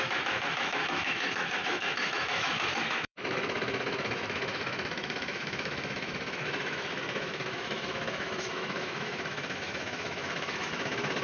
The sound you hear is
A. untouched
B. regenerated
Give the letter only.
B